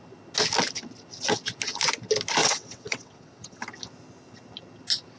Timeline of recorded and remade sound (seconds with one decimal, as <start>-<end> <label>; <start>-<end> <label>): 0.0-2.4 recorded; 2.4-3.6 remade; 3.6-5.2 recorded